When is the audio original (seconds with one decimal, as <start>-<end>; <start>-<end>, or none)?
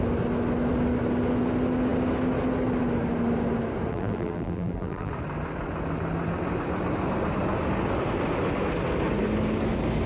0.0-3.9; 5.1-10.1